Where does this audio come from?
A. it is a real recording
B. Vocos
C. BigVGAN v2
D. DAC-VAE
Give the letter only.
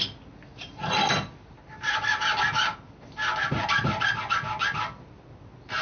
A